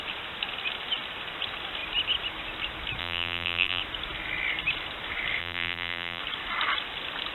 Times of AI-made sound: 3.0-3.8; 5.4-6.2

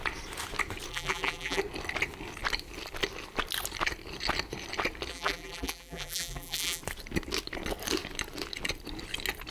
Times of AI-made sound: 0.9-1.6; 5.1-6.8

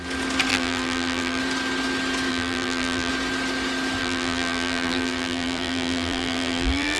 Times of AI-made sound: 0.5-1.4; 2.3-3.1; 4.0-7.0

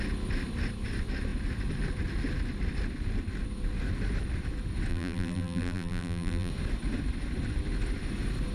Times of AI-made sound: 4.9-6.5